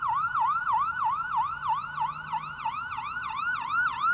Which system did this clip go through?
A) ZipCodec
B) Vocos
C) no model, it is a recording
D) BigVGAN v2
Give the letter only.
C